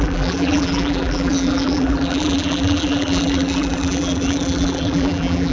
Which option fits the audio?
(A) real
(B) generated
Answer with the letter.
B